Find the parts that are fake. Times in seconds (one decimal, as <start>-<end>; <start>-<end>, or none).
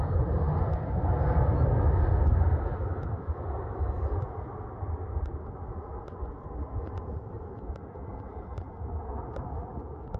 none